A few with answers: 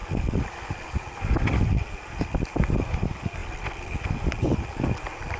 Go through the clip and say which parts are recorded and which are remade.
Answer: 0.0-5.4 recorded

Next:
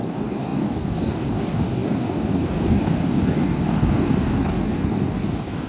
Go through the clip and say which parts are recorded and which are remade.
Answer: 0.0-5.7 remade

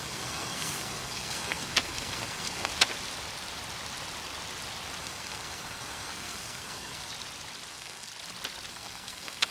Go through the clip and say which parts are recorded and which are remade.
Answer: 0.0-2.7 remade; 2.7-5.0 recorded; 5.0-7.1 remade; 7.1-7.7 recorded; 7.7-8.1 remade; 8.1-8.7 recorded; 8.7-9.5 remade

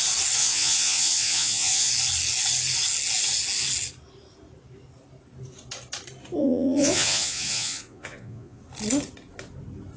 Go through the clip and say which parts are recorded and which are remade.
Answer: 0.0-0.4 recorded; 0.4-1.9 remade; 1.9-6.4 recorded; 6.4-8.6 remade; 8.6-10.0 recorded

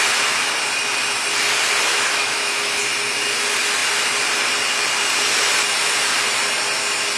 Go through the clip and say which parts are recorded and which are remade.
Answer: 0.0-1.9 recorded; 1.9-2.8 remade; 2.8-7.2 recorded

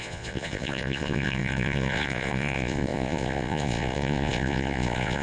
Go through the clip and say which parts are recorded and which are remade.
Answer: 0.0-5.2 remade

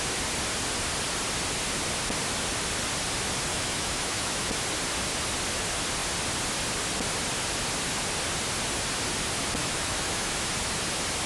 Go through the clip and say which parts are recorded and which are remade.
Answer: 0.0-3.5 recorded; 3.5-4.5 remade; 4.5-9.6 recorded; 9.6-10.5 remade; 10.5-11.3 recorded